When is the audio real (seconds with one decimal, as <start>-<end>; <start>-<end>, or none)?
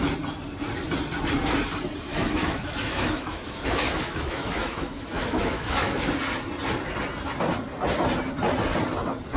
0.0-2.1; 6.1-9.4